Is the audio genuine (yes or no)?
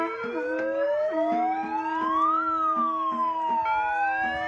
yes